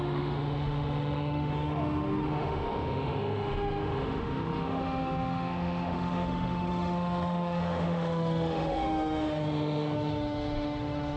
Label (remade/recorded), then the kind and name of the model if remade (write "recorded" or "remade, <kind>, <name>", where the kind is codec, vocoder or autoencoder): remade, autoencoder, DAC-VAE